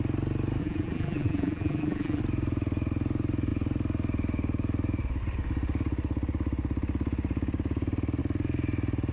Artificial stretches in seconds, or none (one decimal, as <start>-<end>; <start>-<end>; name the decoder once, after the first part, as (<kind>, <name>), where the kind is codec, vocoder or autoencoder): 0.6-2.2 (vocoder, BigVGAN v2)